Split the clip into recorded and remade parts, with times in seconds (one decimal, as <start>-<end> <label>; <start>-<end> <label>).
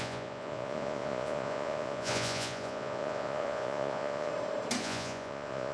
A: 0.0-4.3 remade; 4.3-4.8 recorded; 4.8-5.7 remade